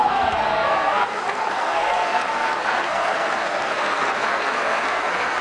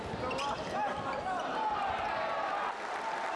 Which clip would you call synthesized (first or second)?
first